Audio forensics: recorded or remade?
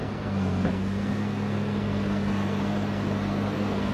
remade